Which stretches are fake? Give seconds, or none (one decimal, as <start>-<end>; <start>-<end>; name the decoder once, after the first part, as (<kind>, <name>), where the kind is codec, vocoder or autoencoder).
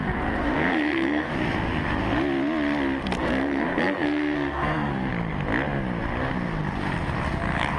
0.0-1.3 (codec, SNAC); 3.2-5.1